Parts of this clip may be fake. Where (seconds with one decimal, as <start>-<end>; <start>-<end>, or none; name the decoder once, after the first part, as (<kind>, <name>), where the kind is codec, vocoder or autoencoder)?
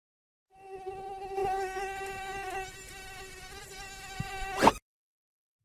none